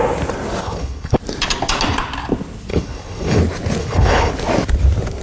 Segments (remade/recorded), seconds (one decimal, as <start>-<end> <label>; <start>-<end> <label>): 0.0-0.6 recorded; 0.6-1.2 remade; 1.2-2.7 recorded; 2.7-3.4 remade; 3.4-3.8 recorded; 3.8-4.3 remade; 4.3-5.2 recorded